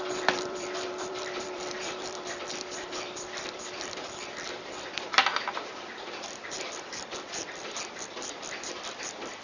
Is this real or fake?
fake